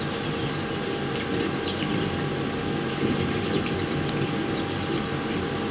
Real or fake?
real